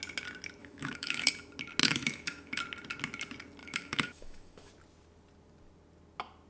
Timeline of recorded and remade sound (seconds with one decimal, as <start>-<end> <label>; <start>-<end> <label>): 0.0-0.6 recorded; 0.6-1.3 remade; 1.3-1.8 recorded; 1.8-2.6 remade; 2.6-3.6 recorded; 3.6-4.7 remade; 4.7-6.5 recorded